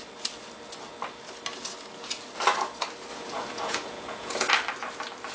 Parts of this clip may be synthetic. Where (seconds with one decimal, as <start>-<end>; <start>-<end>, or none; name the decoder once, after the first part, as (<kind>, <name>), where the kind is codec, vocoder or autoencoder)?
3.1-4.5 (vocoder, Vocos)